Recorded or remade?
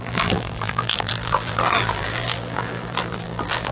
remade